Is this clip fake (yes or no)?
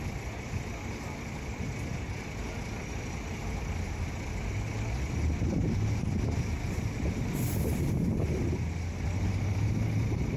no